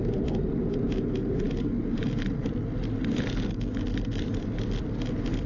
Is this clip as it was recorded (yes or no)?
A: yes